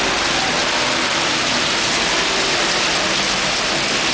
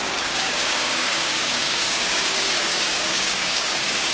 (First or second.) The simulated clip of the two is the second